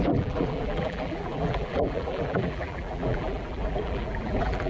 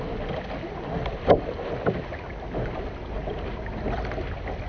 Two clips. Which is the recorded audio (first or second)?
second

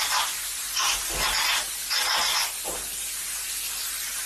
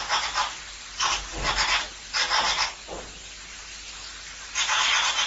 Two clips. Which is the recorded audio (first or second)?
first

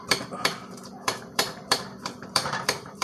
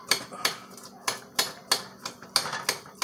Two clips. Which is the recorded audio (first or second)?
second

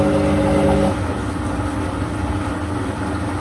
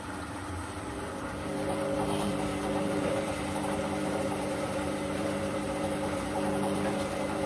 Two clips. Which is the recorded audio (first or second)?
first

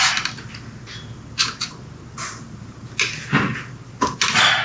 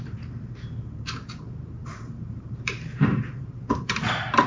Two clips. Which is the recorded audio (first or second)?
first